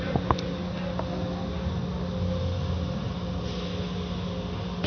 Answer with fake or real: real